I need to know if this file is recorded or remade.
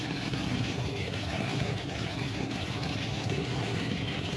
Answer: remade